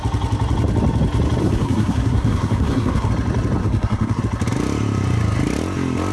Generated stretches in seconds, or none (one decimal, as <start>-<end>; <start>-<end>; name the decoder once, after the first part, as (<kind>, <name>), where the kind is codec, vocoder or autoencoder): 1.4-3.1 (codec, SNAC); 3.6-4.2